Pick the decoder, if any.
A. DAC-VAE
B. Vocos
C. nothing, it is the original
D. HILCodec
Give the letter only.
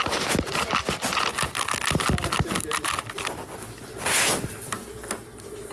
C